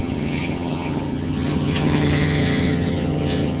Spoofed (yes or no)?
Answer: yes